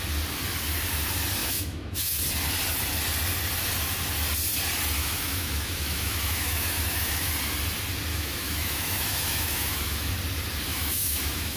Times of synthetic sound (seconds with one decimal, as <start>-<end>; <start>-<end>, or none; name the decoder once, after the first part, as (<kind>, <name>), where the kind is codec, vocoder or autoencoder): 1.4-2.2 (autoencoder, DAC-VAE); 5.0-7.3; 8.1-10.1; 10.7-11.6